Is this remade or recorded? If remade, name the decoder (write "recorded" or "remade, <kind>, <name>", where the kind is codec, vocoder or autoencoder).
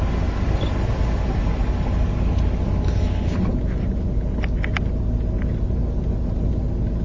recorded